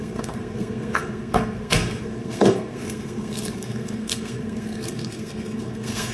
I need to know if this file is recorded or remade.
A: remade